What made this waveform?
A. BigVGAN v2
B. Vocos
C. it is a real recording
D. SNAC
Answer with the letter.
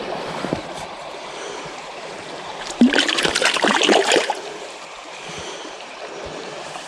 A